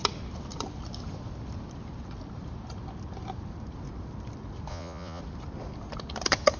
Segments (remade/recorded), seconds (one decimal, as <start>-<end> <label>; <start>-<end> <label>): 0.0-4.7 recorded; 4.7-5.2 remade; 5.2-6.6 recorded